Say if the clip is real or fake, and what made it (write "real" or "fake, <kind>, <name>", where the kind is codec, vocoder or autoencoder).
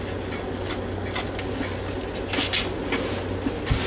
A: real